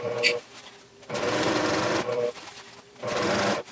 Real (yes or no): no